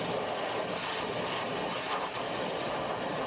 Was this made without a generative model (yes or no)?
yes